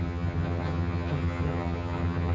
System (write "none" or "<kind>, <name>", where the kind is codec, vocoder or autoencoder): vocoder, HiFi-GAN